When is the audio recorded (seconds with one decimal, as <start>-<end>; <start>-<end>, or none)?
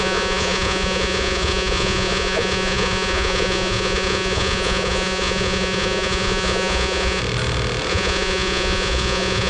7.2-7.9